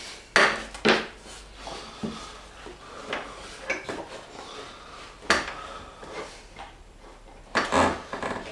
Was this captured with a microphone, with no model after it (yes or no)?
yes